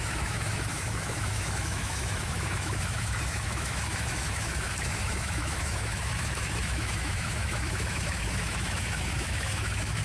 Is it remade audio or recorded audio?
remade